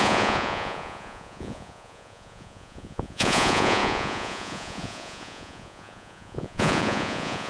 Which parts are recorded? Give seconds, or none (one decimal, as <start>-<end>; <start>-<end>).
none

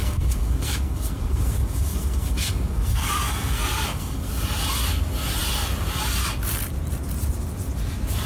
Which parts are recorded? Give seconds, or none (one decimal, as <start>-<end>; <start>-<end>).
4.3-8.3

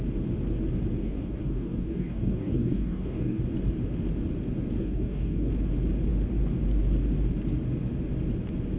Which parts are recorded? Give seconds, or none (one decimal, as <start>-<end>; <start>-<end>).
0.0-1.0; 3.4-4.8; 5.5-8.8

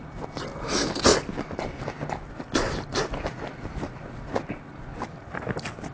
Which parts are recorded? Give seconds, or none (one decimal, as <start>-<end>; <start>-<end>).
0.0-2.9; 3.7-5.2

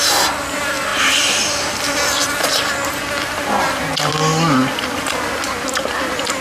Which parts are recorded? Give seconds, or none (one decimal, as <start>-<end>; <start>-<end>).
0.0-6.4

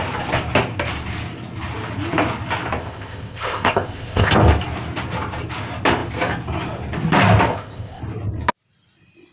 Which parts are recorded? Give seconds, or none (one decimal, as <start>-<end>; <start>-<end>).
0.0-2.8; 4.3-7.5; 8.0-9.3

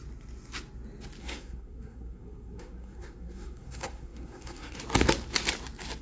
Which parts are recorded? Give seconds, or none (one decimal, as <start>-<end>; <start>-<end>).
0.0-1.2; 4.8-6.0

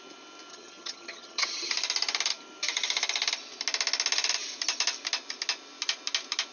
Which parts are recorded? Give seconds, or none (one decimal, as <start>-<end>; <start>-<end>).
0.0-0.5; 1.7-6.5